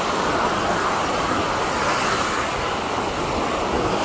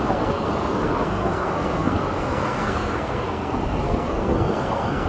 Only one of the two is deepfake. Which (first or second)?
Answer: second